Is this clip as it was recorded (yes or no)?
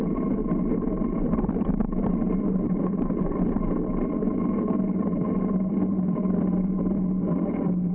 no